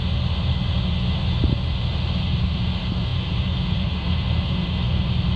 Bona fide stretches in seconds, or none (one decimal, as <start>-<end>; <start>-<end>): 0.0-3.1; 3.9-5.4